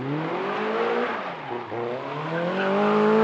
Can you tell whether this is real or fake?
real